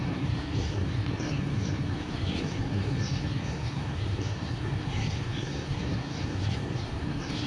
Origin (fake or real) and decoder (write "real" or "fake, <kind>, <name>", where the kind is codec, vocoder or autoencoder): fake, codec, SNAC